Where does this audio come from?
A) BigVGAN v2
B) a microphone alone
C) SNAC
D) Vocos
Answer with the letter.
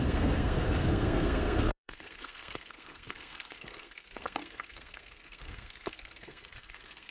C